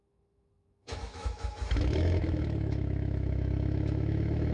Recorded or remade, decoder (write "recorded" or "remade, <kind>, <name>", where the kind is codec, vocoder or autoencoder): remade, autoencoder, DAC-VAE